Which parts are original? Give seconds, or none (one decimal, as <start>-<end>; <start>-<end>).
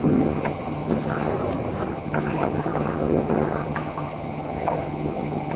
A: 1.3-1.9